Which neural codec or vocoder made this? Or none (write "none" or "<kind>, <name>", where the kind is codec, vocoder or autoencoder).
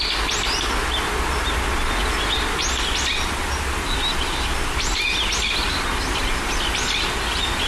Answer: none